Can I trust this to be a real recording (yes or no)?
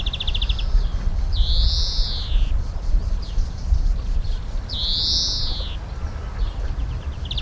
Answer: yes